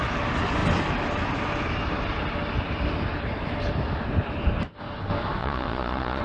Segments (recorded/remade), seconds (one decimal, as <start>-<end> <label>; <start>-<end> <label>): 0.0-5.4 recorded; 5.4-6.2 remade